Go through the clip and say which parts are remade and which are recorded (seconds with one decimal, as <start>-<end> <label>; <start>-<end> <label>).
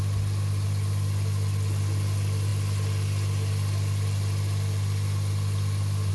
0.0-6.1 recorded